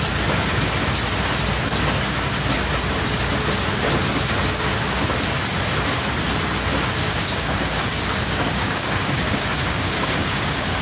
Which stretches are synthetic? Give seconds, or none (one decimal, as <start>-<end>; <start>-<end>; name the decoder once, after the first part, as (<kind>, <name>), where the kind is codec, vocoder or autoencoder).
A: 7.0-10.8 (codec, DAC)